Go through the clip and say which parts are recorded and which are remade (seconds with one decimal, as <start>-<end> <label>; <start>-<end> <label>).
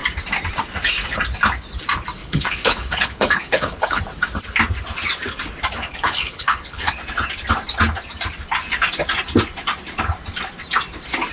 0.0-2.2 recorded; 2.2-4.0 remade; 4.0-5.8 recorded; 5.8-7.0 remade; 7.0-11.3 recorded